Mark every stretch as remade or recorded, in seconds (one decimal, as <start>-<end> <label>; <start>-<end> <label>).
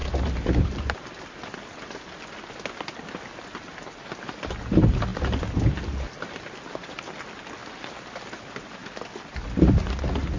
0.0-10.4 recorded